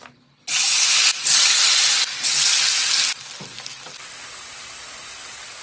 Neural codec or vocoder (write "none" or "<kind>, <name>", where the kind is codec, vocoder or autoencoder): none